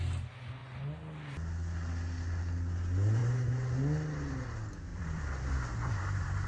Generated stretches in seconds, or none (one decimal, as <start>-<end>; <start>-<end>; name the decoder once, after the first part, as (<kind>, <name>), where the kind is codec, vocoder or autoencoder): 4.9-5.9 (vocoder, BigVGAN v2)